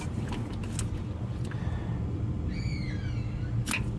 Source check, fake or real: real